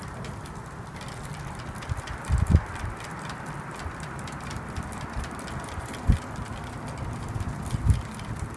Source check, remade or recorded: remade